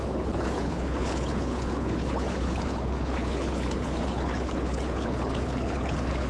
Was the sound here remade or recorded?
remade